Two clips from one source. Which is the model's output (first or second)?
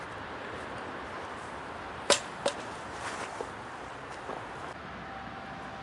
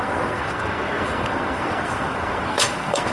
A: second